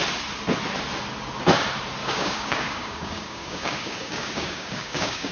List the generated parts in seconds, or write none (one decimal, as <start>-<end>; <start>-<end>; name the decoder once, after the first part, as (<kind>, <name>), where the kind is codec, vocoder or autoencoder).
2.0-5.3 (codec, DAC)